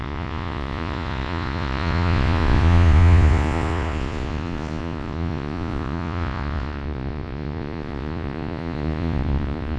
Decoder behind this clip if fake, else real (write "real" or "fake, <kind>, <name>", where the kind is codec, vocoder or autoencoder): fake, vocoder, Vocos